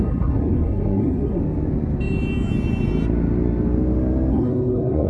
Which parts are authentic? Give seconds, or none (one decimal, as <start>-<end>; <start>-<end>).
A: 1.4-4.3